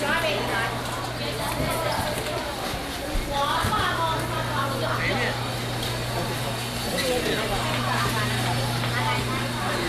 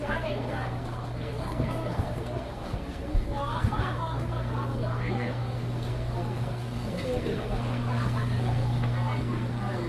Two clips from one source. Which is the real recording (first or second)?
first